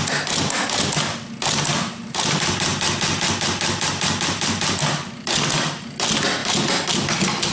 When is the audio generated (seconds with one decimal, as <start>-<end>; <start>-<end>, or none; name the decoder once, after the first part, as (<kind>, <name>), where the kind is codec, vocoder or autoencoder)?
none